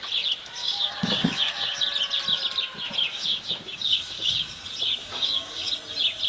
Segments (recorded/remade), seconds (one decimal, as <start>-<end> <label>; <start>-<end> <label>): 0.0-0.6 recorded; 0.6-1.8 remade; 1.8-3.1 recorded; 3.1-4.6 remade; 4.6-5.0 recorded; 5.0-5.7 remade; 5.7-6.3 recorded